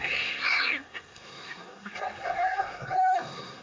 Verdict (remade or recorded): remade